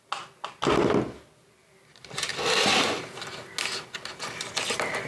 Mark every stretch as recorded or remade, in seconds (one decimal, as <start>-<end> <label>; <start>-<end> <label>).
0.0-5.1 recorded